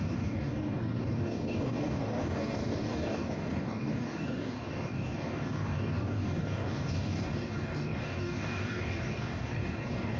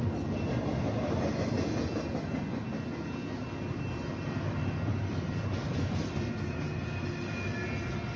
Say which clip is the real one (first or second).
second